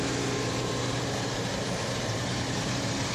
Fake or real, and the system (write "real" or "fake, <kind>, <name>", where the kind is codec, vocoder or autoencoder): fake, vocoder, BigVGAN v2